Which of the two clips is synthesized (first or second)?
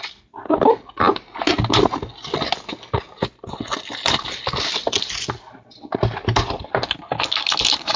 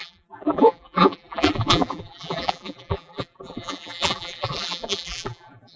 second